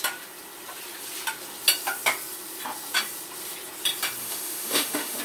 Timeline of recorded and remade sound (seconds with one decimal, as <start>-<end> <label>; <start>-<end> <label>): 0.0-4.2 recorded; 4.2-5.2 remade